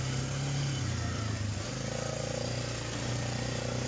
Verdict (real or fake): real